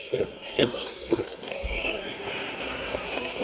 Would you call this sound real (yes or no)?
no